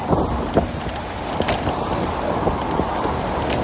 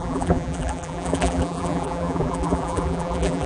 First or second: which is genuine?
first